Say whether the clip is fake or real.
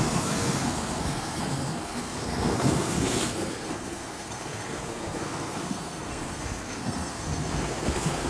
fake